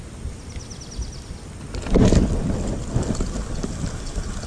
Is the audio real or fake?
real